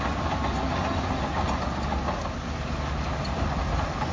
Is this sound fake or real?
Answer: real